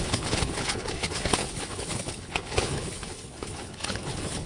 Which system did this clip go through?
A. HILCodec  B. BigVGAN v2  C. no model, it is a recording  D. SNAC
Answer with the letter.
A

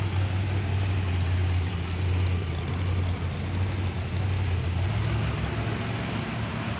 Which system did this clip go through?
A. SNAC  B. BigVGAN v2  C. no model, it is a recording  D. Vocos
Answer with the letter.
C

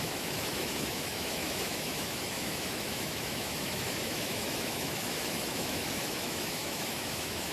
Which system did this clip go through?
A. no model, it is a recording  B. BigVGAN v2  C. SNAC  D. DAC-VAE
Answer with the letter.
D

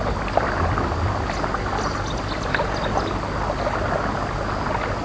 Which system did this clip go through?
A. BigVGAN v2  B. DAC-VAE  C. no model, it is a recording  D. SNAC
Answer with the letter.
C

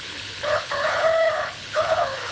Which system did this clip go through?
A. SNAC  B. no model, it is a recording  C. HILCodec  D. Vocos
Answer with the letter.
C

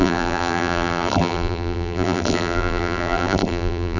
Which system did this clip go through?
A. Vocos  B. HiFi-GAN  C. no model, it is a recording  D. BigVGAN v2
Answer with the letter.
D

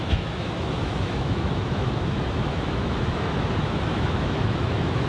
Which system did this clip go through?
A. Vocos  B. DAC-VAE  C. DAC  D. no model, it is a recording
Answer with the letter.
B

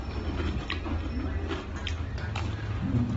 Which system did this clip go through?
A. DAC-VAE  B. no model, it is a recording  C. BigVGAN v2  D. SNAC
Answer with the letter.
B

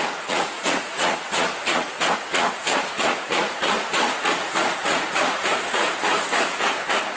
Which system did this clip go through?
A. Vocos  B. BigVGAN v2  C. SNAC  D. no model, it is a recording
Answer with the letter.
A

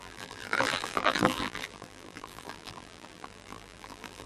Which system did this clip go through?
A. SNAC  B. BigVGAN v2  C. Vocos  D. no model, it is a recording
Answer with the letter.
B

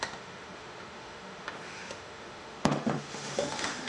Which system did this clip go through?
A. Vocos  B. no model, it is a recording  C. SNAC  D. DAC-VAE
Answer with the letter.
D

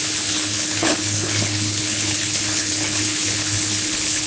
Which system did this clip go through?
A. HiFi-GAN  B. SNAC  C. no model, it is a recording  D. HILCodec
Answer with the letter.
D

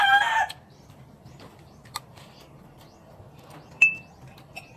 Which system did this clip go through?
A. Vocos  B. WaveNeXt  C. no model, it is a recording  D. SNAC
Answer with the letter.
C